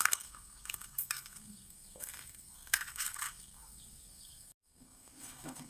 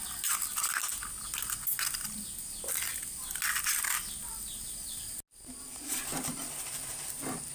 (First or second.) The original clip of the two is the second